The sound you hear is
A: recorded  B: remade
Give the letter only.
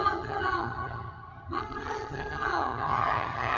B